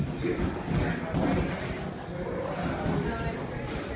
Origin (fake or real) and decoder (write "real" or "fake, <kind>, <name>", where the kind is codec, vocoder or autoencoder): real